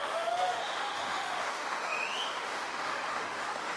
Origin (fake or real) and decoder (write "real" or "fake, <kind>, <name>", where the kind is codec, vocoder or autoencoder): fake, autoencoder, DAC-VAE